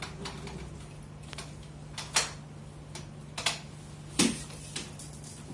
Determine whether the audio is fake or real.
real